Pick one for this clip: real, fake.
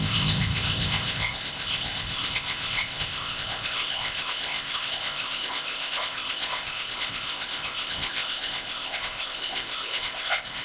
fake